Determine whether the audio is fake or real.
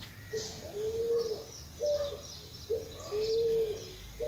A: real